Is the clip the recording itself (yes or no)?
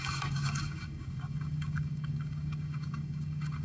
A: no